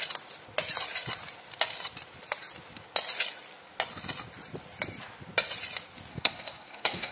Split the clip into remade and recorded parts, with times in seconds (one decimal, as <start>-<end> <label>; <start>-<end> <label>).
0.0-6.1 recorded; 6.1-7.1 remade